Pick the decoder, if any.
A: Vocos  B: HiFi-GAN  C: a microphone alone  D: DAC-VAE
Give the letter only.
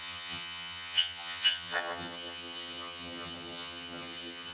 B